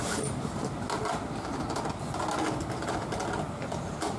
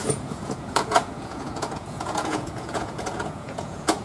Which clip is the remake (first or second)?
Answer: second